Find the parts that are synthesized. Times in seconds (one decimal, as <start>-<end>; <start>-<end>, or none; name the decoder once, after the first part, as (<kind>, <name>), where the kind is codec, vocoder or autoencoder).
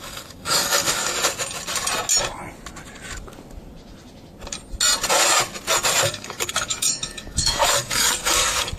0.0-1.0 (codec, DAC); 6.0-8.8